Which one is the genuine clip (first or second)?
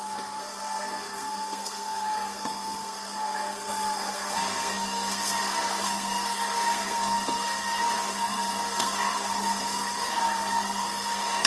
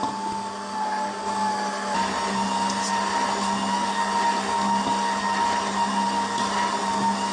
second